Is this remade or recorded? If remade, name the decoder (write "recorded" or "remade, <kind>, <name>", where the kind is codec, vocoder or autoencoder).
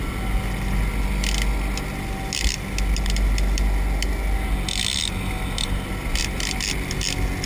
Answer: recorded